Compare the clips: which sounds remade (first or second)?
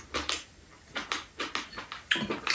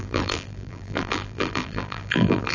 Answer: second